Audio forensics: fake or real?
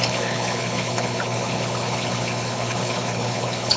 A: fake